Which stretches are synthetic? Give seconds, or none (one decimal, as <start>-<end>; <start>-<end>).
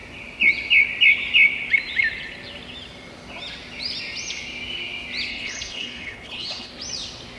5.3-6.7